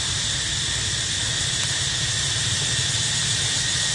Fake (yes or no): no